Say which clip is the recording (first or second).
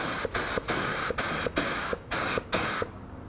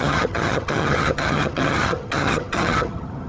first